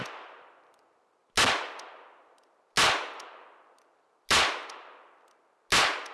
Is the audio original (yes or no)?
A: yes